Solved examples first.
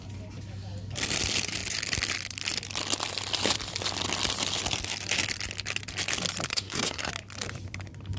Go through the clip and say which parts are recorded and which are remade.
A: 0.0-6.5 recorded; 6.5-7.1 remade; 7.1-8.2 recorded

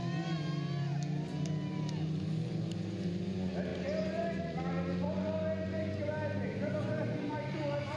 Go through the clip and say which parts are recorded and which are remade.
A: 0.0-8.0 recorded

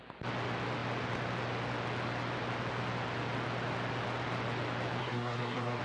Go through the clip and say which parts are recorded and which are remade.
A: 0.0-5.0 recorded; 5.0-5.8 remade

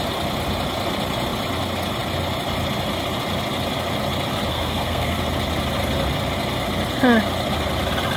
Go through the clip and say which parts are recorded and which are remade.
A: 0.0-4.5 recorded; 4.5-5.2 remade; 5.2-8.2 recorded